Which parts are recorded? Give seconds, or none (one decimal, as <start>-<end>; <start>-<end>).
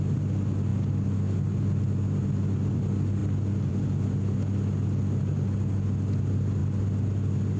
0.0-7.6